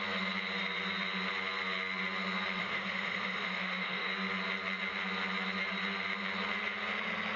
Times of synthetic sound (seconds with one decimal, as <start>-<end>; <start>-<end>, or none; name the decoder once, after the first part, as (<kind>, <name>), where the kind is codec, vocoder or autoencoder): 2.6-4.1 (autoencoder, DAC-VAE)